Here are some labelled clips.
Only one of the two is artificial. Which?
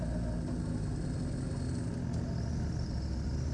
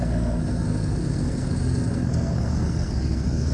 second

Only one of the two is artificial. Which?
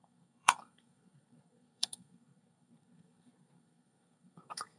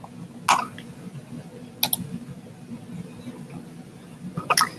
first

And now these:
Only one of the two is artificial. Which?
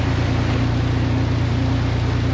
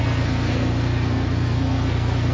second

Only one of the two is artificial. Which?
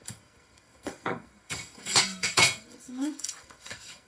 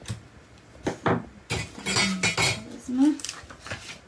first